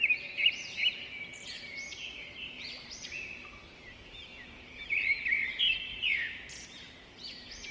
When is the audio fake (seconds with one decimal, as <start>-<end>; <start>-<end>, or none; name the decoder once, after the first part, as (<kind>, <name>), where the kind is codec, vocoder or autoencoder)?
0.0-7.7 (vocoder, BigVGAN v2)